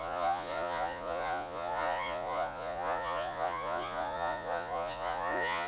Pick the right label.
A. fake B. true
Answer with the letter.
A